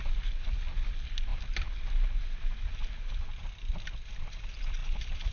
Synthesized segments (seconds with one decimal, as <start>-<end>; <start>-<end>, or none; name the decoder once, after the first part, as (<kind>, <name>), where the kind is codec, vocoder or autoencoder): none